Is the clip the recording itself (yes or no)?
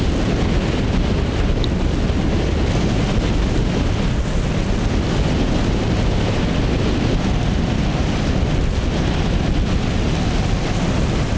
yes